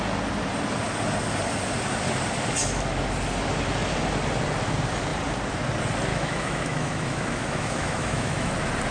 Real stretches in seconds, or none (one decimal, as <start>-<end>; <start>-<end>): 0.0-6.1; 8.5-8.9